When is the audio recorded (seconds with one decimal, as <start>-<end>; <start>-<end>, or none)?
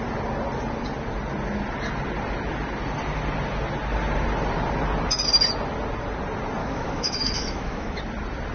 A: 0.0-6.6; 8.0-8.5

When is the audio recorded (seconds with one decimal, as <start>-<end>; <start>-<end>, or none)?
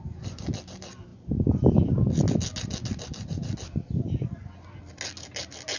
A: 0.0-5.8